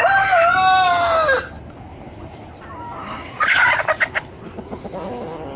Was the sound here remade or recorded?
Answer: recorded